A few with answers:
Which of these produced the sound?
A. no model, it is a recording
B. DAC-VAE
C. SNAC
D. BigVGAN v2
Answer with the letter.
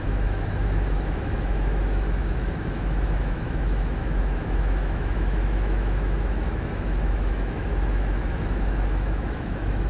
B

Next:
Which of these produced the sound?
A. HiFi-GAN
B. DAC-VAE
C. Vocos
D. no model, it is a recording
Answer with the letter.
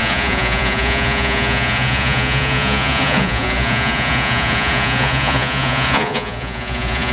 C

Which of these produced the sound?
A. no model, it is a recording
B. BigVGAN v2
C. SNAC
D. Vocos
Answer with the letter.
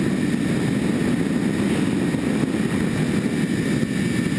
A